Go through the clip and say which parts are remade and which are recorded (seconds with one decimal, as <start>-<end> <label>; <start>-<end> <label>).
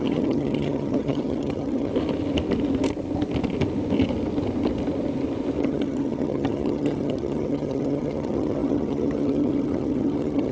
0.0-1.9 remade; 1.9-5.6 recorded; 5.6-10.5 remade